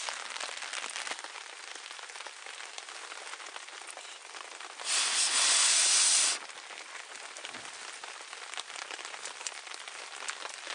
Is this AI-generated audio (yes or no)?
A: no